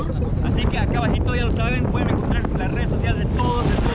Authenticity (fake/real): real